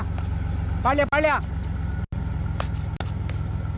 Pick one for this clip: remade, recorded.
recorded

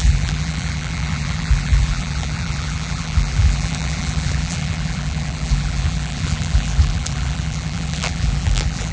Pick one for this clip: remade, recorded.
remade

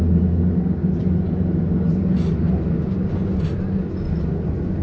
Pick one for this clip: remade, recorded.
recorded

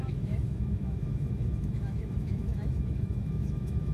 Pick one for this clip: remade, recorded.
remade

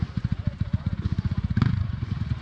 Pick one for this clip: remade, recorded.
remade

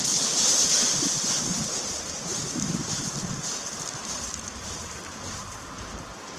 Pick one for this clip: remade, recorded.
recorded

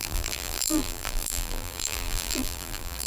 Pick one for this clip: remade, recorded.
remade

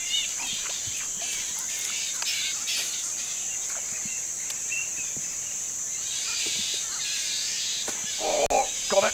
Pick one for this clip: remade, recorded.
recorded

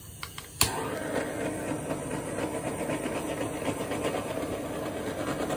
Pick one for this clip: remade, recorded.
recorded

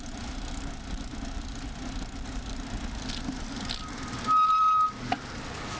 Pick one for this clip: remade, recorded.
recorded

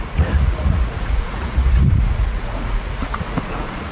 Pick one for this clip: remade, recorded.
remade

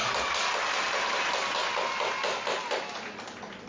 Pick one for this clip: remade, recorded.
recorded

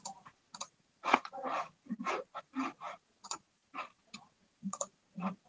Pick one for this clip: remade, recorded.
remade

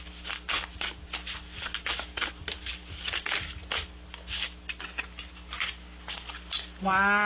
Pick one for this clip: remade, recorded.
recorded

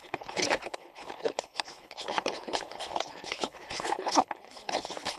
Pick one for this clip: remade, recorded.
remade